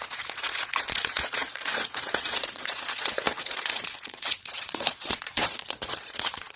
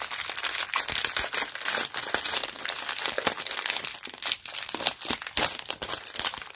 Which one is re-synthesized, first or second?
first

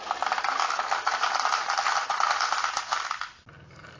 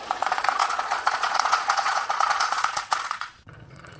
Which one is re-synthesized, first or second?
second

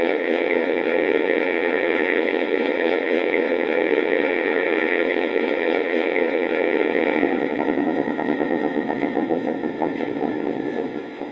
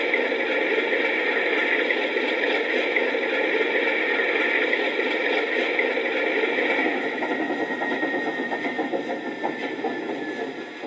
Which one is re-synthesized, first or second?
first